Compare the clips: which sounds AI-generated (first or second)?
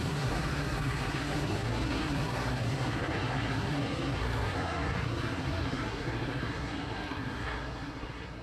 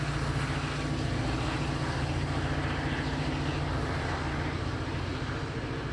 first